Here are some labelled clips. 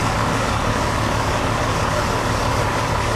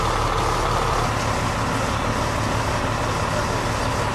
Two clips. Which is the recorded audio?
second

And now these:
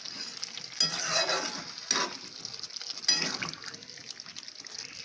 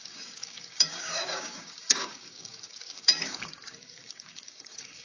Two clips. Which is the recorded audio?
first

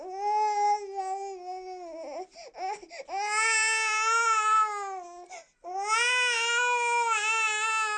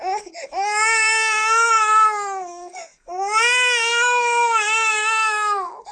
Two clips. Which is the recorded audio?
first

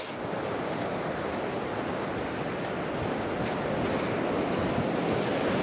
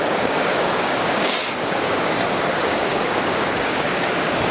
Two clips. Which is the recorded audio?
first